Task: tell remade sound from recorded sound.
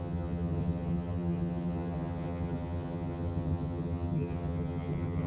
remade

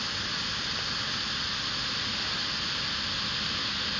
recorded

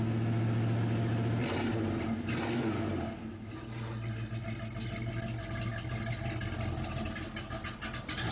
recorded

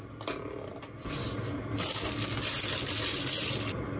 recorded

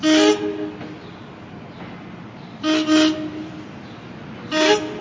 recorded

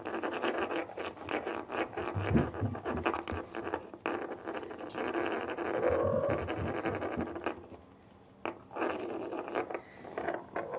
recorded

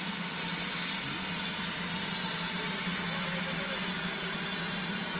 recorded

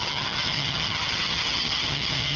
remade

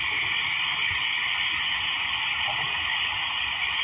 recorded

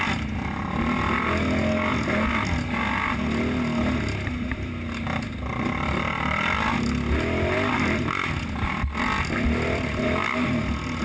recorded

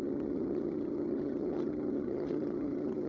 remade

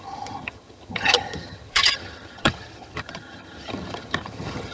remade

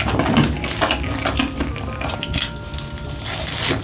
recorded